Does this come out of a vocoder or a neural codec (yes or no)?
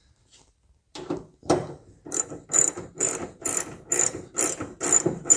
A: no